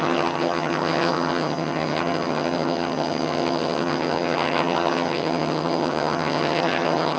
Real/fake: fake